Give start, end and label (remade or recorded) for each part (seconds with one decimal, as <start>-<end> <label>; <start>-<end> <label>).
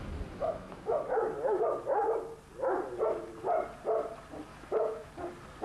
0.0-0.4 recorded; 0.4-1.0 remade; 1.0-4.5 recorded; 4.5-5.1 remade; 5.1-5.6 recorded